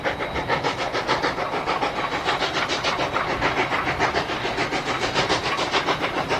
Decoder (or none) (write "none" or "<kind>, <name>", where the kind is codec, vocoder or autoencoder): none